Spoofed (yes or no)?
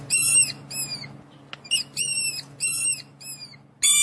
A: no